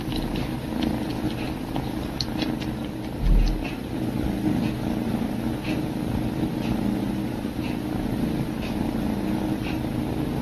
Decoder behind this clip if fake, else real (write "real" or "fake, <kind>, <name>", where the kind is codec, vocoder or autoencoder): real